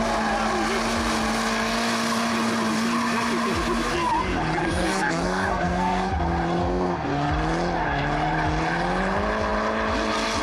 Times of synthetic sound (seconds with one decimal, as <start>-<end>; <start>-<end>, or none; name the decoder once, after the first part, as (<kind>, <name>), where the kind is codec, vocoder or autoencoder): 4.6-6.1 (codec, SNAC); 6.6-7.3